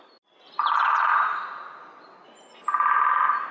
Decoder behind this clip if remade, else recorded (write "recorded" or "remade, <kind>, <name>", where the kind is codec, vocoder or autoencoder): recorded